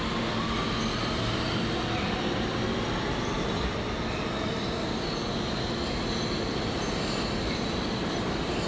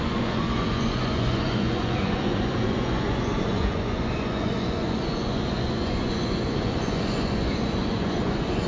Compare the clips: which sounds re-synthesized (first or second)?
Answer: second